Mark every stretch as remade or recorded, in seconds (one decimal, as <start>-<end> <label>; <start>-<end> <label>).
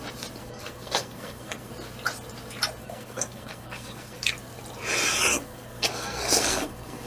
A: 0.0-0.4 recorded; 0.4-1.7 remade; 1.7-2.8 recorded; 2.8-4.3 remade; 4.3-5.3 recorded; 5.3-7.1 remade